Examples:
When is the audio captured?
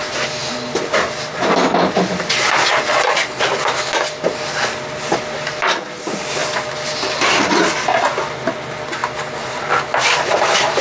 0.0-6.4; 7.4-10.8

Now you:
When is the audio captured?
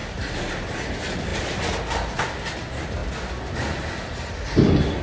0.0-5.0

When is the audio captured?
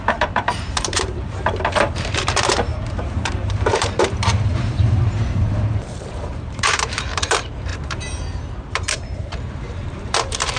none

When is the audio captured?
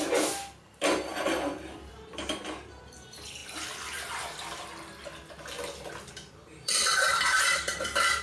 1.1-1.9; 3.4-6.1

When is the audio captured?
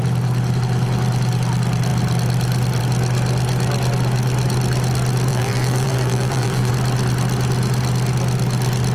0.0-5.3; 6.7-8.9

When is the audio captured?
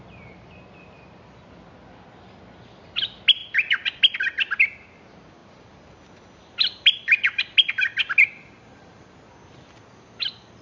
0.0-5.4; 9.3-10.6